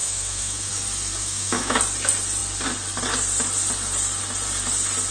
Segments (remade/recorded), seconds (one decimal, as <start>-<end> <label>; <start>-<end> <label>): 0.0-0.7 remade; 0.7-1.2 recorded; 1.2-1.8 remade; 1.8-5.1 recorded